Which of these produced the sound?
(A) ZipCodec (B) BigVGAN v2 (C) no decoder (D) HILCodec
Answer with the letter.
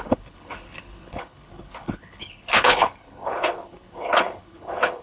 D